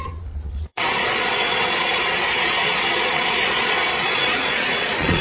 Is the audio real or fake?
fake